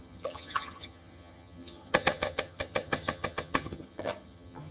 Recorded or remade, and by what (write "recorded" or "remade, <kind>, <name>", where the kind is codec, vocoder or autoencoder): remade, vocoder, HiFi-GAN